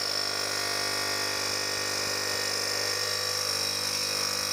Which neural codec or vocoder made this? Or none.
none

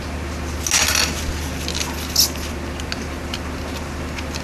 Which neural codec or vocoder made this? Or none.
none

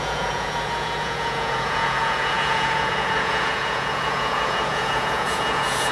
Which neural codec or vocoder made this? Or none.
vocoder, Vocos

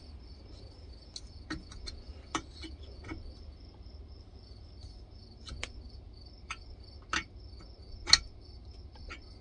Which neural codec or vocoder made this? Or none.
none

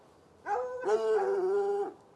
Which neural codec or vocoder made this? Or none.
none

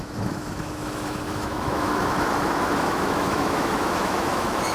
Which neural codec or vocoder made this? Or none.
autoencoder, DAC-VAE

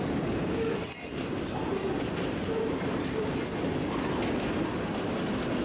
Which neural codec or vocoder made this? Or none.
none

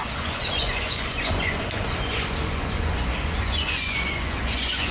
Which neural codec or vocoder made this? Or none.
vocoder, Vocos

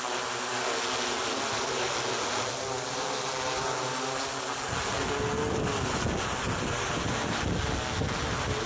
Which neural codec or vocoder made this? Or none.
none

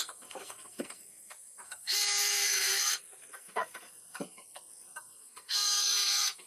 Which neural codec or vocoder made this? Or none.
codec, SNAC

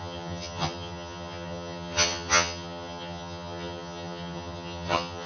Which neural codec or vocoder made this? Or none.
vocoder, HiFi-GAN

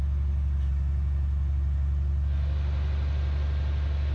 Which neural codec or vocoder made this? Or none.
none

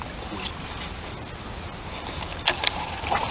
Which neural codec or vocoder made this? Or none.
none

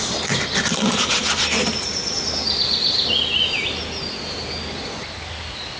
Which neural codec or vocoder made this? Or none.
none